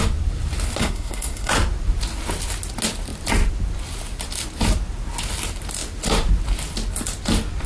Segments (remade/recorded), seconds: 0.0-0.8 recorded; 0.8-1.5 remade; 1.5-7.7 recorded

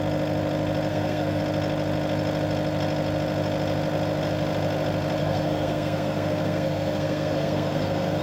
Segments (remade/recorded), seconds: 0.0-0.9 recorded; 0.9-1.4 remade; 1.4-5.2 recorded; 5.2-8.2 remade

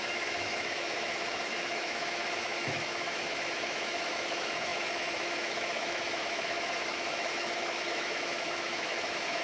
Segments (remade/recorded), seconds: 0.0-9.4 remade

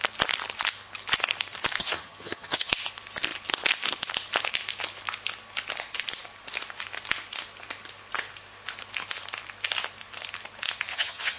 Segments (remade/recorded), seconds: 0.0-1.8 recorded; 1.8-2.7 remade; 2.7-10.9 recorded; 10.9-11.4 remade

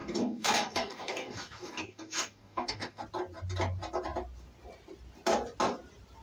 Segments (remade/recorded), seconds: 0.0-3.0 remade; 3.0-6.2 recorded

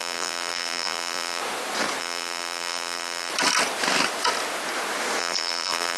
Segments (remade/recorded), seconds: 0.0-1.4 remade; 1.4-2.0 recorded; 2.0-3.3 remade; 3.3-5.2 recorded; 5.2-6.0 remade

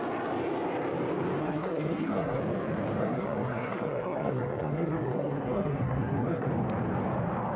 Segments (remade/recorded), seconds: 0.0-1.4 recorded; 1.4-2.4 remade; 2.4-3.0 recorded; 3.0-6.5 remade; 6.5-7.6 recorded

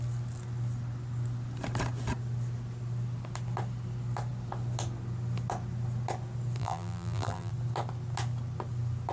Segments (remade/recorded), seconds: 0.0-6.6 recorded; 6.6-7.5 remade; 7.5-9.1 recorded